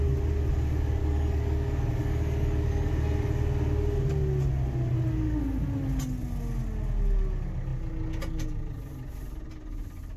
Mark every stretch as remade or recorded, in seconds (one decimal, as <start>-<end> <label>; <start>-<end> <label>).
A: 0.0-1.0 recorded; 1.0-2.9 remade; 2.9-10.2 recorded